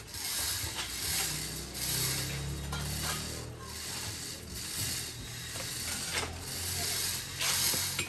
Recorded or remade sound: recorded